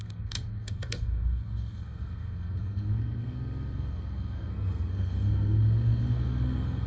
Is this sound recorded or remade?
remade